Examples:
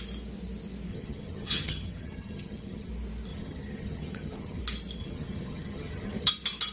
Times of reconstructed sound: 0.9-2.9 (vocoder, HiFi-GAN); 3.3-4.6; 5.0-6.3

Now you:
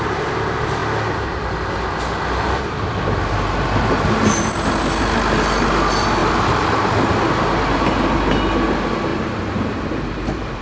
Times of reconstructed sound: 9.1-10.6 (vocoder, BigVGAN v2)

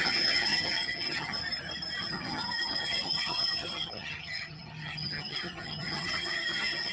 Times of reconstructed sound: 0.0-1.4 (vocoder, HiFi-GAN); 2.0-6.9

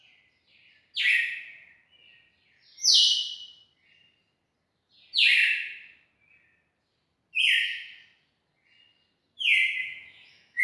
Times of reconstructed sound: 9.8-10.6 (autoencoder, DAC-VAE)